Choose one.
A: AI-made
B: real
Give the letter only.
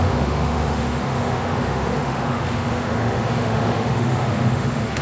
A